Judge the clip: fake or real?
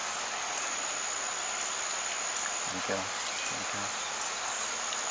real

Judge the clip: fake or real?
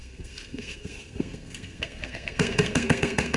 fake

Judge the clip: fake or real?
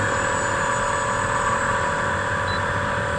real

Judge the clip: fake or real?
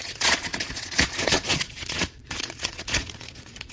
fake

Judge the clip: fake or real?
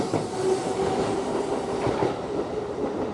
real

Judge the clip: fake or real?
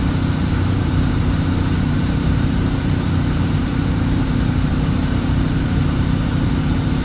fake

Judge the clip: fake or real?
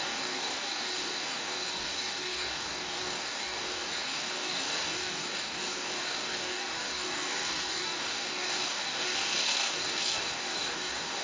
fake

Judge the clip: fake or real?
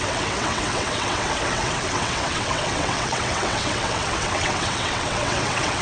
fake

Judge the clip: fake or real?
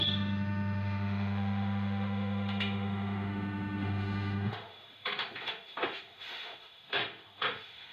fake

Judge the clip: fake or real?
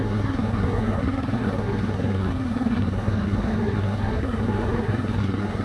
fake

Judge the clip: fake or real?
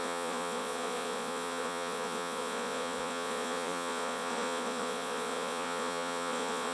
fake